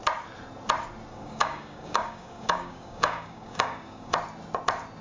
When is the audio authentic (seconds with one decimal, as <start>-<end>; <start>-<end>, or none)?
0.0-1.1; 4.1-5.0